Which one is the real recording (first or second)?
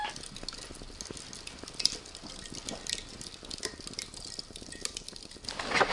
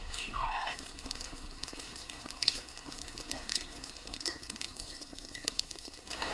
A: first